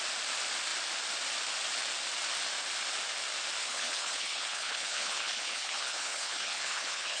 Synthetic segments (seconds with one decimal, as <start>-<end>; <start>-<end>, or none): 3.6-7.2